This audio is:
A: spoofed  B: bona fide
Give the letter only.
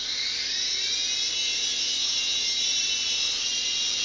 B